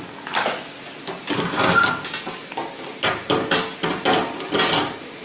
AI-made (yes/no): no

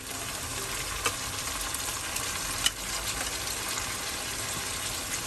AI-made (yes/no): no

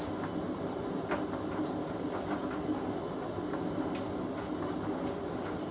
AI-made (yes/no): no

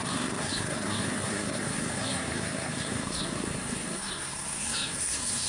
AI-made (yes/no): yes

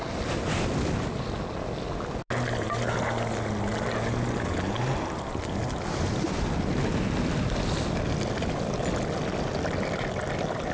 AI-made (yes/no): no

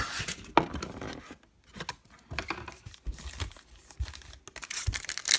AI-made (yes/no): no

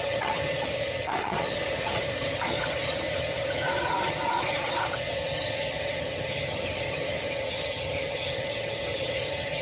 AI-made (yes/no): yes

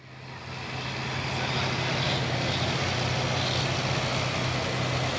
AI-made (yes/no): no